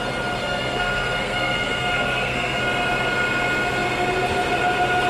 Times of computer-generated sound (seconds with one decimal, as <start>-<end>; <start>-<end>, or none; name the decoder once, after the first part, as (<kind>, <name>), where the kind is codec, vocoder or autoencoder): 0.4-2.6 (codec, SNAC)